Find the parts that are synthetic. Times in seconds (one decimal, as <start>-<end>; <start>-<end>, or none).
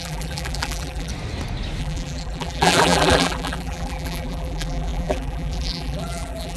0.0-1.1; 1.8-6.6